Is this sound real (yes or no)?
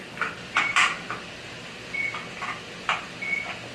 yes